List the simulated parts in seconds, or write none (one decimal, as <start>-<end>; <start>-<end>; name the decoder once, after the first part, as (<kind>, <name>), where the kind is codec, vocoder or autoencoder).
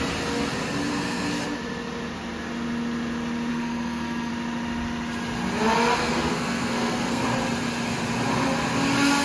0.9-1.4 (codec, SNAC); 3.5-4.3; 6.0-7.2